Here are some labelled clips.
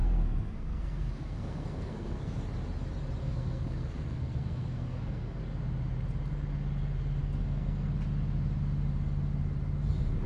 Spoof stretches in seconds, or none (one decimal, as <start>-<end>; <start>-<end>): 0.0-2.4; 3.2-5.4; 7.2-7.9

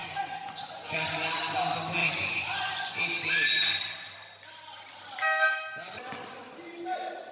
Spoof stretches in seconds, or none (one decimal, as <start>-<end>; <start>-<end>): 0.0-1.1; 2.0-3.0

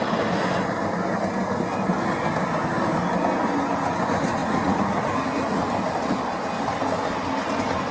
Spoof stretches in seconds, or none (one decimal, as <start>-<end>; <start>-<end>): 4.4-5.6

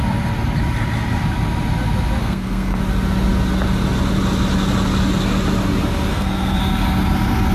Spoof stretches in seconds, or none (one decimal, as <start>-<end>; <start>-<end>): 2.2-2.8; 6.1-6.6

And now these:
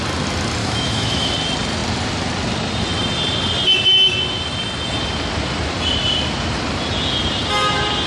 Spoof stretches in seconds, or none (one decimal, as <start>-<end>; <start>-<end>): 0.6-1.3